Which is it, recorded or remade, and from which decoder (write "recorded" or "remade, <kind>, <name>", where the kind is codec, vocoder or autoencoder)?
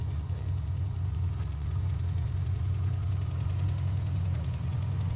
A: remade, vocoder, Vocos